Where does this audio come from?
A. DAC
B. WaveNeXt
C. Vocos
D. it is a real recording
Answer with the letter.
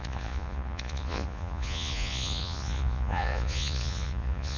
C